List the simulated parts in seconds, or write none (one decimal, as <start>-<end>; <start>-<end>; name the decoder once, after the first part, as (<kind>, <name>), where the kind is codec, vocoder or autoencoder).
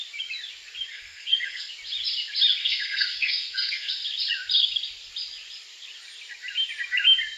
0.9-1.7 (codec, SNAC); 2.6-3.9